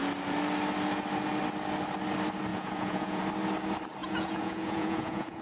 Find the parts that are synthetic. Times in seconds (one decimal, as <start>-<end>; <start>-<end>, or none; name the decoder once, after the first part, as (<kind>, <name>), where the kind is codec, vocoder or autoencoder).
2.5-3.2 (vocoder, Vocos); 4.0-5.4